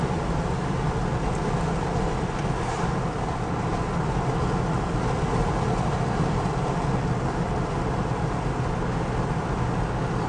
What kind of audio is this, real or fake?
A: real